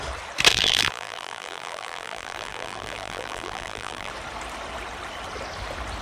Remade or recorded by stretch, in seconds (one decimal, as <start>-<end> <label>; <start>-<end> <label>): 0.0-0.5 recorded; 0.5-4.1 remade; 4.1-6.0 recorded